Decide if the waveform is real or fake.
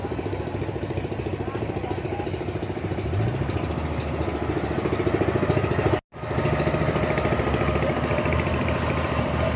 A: real